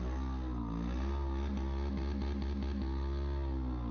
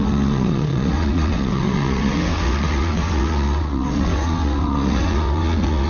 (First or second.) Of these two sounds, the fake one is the second